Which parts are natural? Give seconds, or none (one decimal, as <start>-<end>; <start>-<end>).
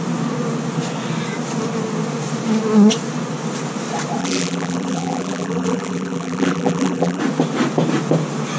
0.0-4.2; 7.2-8.6